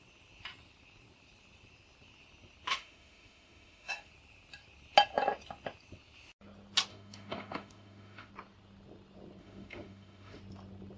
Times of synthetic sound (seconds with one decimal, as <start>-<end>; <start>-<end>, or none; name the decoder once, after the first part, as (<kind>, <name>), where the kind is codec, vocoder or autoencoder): 2.7-4.1 (autoencoder, DAC-VAE); 6.9-8.3; 9.4-10.4

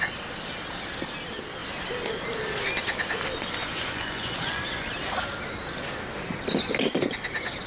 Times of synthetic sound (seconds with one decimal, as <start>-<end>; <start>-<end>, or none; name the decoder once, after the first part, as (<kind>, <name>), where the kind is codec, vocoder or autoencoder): 3.6-4.9 (vocoder, Vocos)